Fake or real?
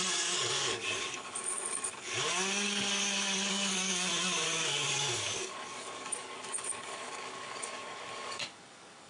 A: fake